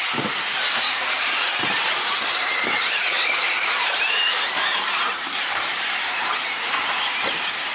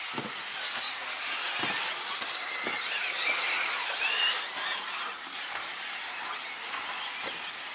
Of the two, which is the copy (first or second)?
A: first